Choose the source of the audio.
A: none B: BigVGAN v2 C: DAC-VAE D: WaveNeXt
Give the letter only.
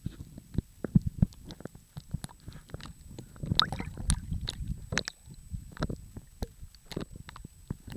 A